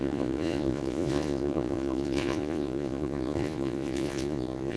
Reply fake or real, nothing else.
fake